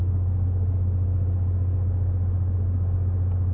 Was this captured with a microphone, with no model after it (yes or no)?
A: yes